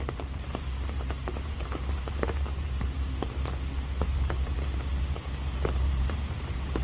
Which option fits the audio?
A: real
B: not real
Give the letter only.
B